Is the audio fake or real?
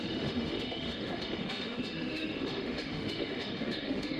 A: fake